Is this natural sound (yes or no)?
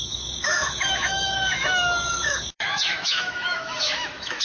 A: no